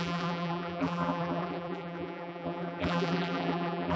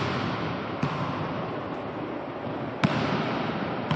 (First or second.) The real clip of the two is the second